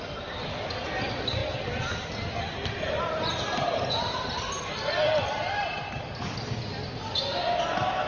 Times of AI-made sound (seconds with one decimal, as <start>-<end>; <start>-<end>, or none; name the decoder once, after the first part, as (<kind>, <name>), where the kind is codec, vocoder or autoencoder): 0.0-1.4 (vocoder, BigVGAN v2); 3.0-5.6; 7.5-8.1

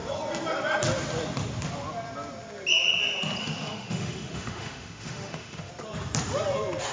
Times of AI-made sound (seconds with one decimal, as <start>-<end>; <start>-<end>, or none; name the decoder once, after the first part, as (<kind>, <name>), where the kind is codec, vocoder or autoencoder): 3.4-5.7 (autoencoder, DAC-VAE)